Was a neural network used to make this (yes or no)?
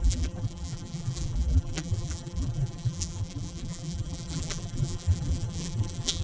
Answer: yes